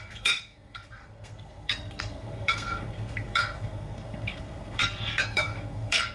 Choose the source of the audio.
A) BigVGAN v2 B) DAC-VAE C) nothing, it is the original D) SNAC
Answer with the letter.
D